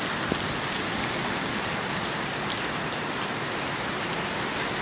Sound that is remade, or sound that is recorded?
recorded